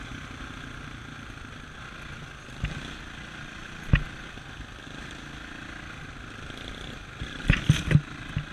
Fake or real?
real